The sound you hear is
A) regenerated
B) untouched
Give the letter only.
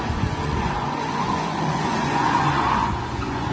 A